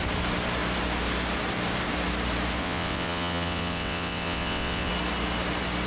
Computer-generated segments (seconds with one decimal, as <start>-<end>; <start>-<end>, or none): 2.6-4.9